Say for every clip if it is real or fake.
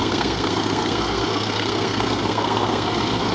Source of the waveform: fake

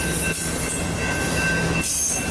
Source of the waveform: real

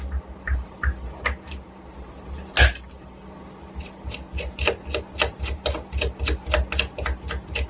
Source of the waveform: real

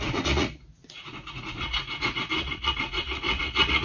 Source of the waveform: fake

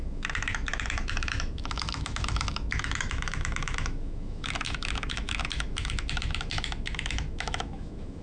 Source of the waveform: fake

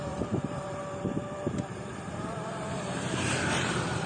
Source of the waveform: fake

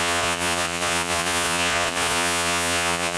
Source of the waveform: fake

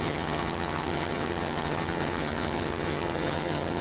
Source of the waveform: fake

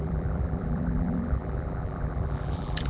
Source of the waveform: fake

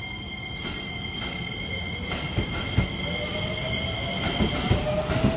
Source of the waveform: real